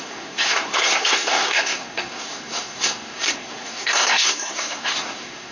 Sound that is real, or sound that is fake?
fake